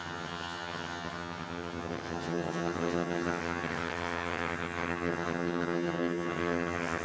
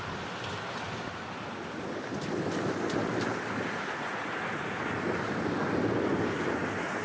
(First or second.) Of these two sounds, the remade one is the first